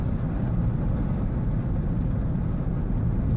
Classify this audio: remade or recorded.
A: recorded